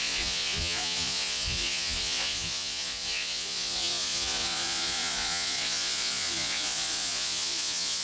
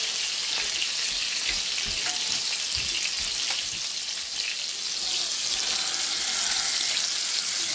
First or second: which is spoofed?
first